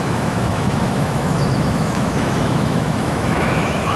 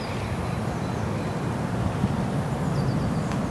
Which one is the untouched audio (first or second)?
second